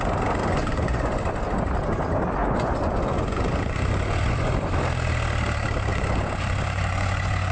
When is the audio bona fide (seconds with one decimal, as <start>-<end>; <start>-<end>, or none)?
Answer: 0.0-0.4; 1.3-2.4; 4.5-5.9